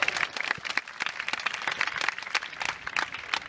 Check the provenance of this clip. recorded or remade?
recorded